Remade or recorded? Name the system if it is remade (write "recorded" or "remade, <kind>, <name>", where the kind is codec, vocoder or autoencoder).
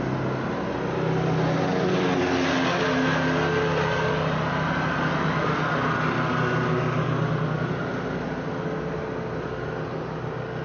recorded